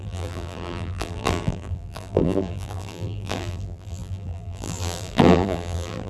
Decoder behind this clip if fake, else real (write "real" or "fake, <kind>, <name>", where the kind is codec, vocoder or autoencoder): fake, vocoder, BigVGAN v2